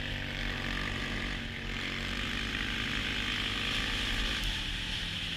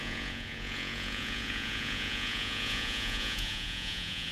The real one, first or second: first